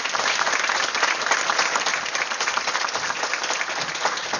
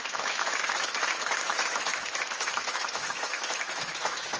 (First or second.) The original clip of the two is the first